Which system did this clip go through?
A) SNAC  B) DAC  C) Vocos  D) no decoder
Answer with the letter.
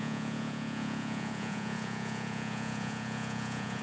C